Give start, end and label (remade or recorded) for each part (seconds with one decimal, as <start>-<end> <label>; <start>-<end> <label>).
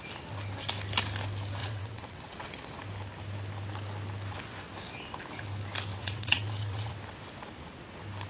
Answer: 0.0-1.6 recorded; 1.6-2.7 remade; 2.7-5.9 recorded; 5.9-6.9 remade; 6.9-8.3 recorded